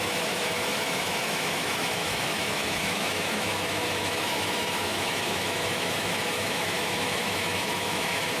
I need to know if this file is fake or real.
fake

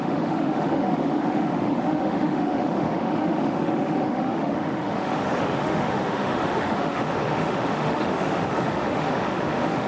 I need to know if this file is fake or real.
fake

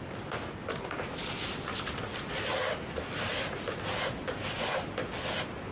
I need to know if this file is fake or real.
real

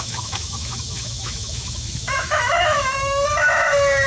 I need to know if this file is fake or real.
fake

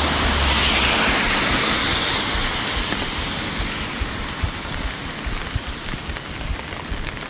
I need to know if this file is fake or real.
real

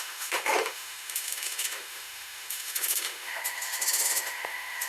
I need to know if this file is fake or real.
fake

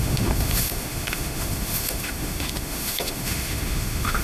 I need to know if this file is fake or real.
fake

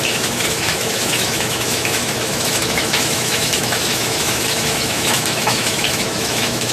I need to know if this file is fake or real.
fake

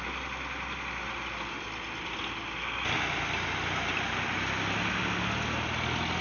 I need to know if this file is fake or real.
real